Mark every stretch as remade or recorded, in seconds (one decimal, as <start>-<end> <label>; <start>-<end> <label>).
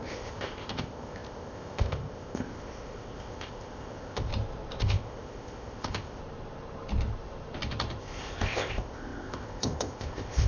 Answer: 0.0-4.3 remade; 4.3-4.8 recorded; 4.8-6.2 remade; 6.2-8.0 recorded; 8.0-10.5 remade